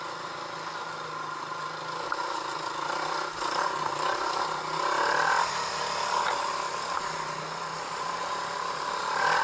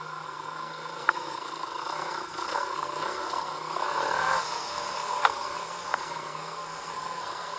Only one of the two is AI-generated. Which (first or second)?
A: second